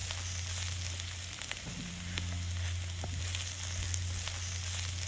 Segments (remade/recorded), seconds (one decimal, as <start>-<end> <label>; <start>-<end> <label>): 0.0-5.1 recorded